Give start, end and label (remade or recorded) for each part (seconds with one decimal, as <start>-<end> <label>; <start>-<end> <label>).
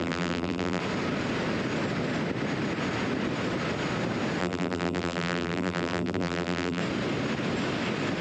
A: 0.0-0.8 remade; 0.8-4.4 recorded; 4.4-6.8 remade; 6.8-8.2 recorded